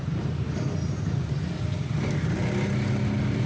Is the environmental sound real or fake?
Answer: real